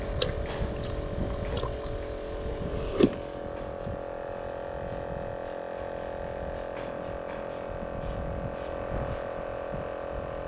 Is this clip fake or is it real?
real